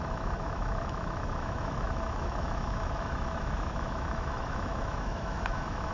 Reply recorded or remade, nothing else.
remade